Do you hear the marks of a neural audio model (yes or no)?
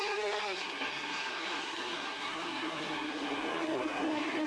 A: yes